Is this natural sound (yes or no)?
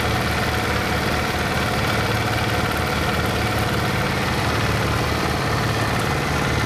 yes